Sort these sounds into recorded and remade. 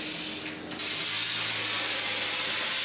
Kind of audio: recorded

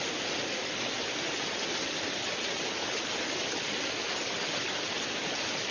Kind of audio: recorded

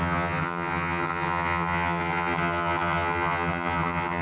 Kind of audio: remade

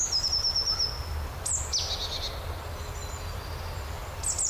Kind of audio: recorded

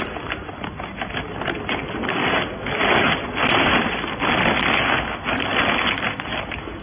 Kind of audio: recorded